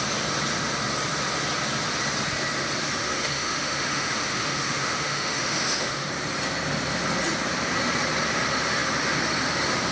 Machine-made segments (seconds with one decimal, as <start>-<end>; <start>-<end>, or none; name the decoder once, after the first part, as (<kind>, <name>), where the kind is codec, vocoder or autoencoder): 3.0-6.1 (autoencoder, DAC-VAE)